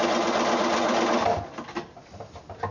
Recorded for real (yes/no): yes